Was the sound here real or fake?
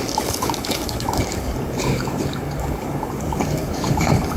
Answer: fake